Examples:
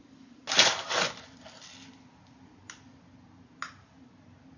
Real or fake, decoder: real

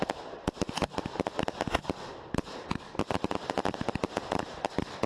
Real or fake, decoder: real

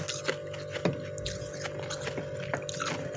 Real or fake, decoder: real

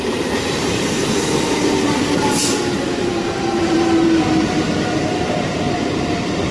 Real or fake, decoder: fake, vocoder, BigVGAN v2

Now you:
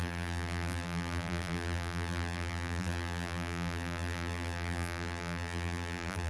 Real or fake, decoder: fake, vocoder, BigVGAN v2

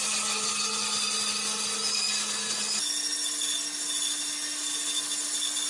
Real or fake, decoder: real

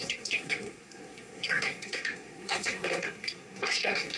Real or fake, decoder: fake, codec, SNAC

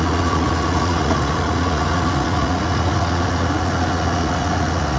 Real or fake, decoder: fake, vocoder, Vocos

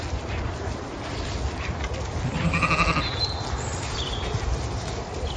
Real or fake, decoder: real